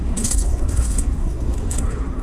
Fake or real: fake